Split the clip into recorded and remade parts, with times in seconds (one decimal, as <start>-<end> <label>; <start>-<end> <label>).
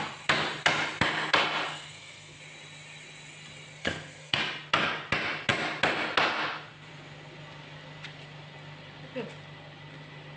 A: 0.0-1.7 recorded; 1.7-2.4 remade; 2.4-3.8 recorded; 3.8-4.4 remade; 4.4-10.4 recorded